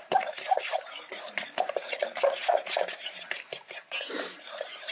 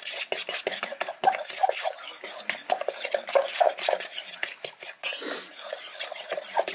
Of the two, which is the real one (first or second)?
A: second